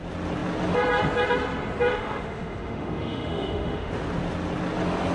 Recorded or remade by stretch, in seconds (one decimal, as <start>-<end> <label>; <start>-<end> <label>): 0.0-1.9 recorded; 1.9-3.9 remade; 3.9-5.1 recorded